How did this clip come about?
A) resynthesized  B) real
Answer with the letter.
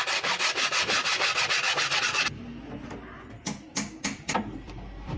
B